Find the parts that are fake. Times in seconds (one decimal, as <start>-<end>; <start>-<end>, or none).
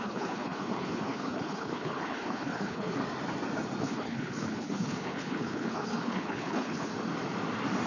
0.0-3.0; 3.8-6.9